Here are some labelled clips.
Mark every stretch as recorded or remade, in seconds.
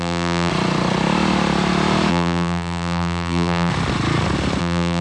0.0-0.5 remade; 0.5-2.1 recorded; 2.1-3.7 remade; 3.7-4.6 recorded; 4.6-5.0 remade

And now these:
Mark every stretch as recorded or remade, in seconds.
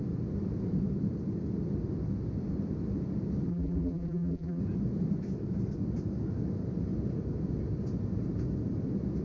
0.0-3.5 recorded; 3.5-4.6 remade; 4.6-9.2 recorded